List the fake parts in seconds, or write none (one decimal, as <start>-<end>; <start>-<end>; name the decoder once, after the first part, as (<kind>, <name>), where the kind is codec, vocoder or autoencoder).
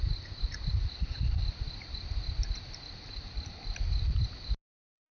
none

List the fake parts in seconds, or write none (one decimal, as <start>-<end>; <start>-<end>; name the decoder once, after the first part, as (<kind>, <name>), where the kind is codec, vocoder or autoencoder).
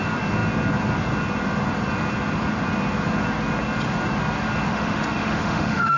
4.7-6.0 (autoencoder, DAC-VAE)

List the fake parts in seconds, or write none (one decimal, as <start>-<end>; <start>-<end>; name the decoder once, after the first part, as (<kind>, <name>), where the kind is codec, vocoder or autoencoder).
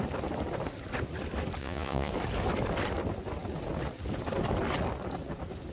1.6-2.1 (vocoder, Vocos)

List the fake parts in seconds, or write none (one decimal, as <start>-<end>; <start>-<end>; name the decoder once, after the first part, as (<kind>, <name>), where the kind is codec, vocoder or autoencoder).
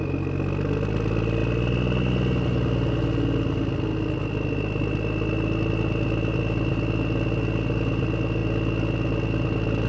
none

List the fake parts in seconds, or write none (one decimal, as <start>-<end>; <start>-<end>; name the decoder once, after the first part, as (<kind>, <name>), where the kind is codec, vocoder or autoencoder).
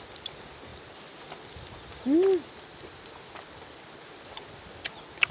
none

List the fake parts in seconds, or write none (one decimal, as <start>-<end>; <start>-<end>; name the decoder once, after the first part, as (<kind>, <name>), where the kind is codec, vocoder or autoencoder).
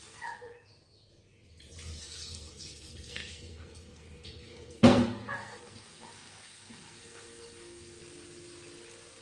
0.0-0.7 (codec, SNAC); 2.0-8.0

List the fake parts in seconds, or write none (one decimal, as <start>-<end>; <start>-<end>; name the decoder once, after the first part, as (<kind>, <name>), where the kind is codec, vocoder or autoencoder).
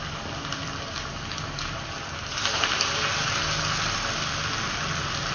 none